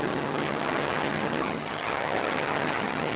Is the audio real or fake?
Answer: fake